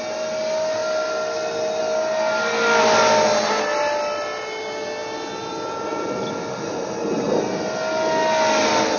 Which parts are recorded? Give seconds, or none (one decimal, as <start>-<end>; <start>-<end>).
0.0-9.0